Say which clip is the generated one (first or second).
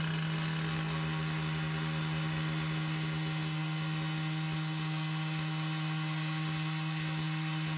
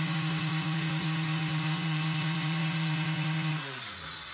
second